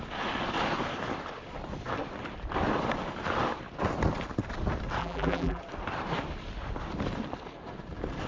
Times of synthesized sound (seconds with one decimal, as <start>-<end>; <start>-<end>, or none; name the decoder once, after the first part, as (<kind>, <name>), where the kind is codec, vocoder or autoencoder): 5.0-5.6 (vocoder, BigVGAN v2)